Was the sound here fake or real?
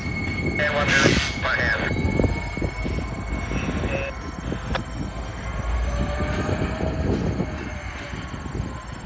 real